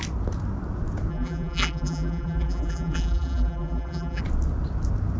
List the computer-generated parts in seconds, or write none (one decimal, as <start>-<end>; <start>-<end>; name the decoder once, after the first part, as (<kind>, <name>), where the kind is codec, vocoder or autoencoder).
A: 1.1-4.2 (vocoder, BigVGAN v2)